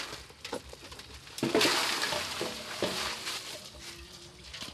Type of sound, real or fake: real